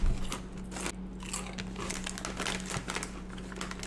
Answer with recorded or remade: recorded